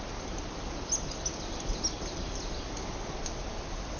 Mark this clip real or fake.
real